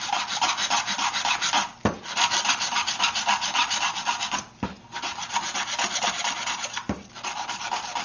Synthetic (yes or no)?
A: no